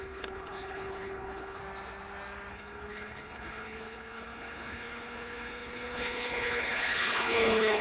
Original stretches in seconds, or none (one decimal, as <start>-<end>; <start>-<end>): 1.6-2.5